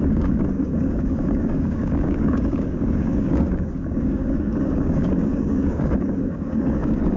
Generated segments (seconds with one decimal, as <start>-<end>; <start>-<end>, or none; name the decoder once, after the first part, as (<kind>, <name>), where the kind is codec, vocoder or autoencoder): 0.0-7.2 (codec, DAC)